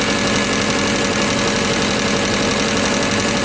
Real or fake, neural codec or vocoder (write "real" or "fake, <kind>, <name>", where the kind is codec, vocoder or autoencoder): real